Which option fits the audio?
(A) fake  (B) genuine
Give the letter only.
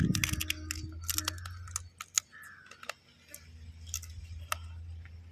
B